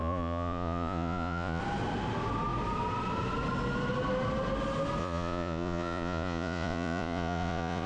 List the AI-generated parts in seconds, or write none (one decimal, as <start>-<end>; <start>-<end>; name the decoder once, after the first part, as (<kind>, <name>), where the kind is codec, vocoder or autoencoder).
0.0-1.6 (vocoder, Vocos); 5.0-7.9